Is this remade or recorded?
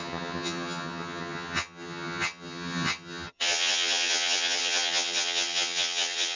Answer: remade